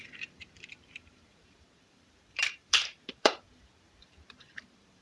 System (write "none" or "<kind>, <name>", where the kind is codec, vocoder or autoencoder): vocoder, BigVGAN v2